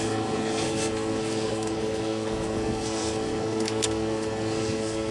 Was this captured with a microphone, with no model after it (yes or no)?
no